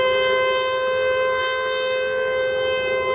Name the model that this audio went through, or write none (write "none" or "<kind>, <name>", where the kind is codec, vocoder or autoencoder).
vocoder, BigVGAN v2